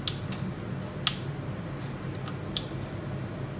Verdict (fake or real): real